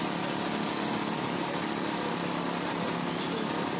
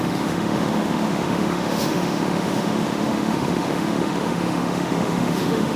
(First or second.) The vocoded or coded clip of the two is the second